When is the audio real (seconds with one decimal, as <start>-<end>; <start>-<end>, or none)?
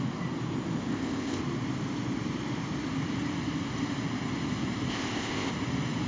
0.0-0.9; 1.4-4.9; 5.5-6.1